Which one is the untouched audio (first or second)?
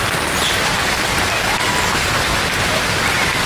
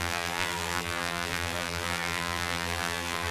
first